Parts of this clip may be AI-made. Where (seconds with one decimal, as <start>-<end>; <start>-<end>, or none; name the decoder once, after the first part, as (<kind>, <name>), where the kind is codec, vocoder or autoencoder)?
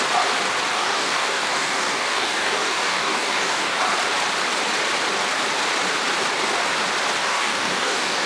0.7-3.8 (codec, DAC); 7.2-8.3